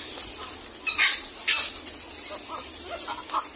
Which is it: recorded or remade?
recorded